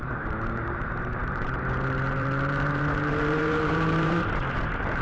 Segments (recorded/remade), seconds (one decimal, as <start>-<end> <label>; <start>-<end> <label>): 0.0-5.0 remade